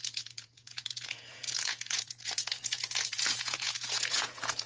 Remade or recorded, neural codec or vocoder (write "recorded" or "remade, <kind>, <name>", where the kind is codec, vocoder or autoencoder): remade, vocoder, Vocos